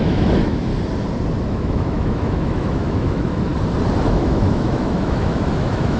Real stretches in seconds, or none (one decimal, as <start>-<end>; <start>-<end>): 0.7-1.5; 3.5-4.0